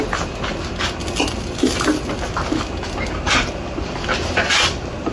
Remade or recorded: recorded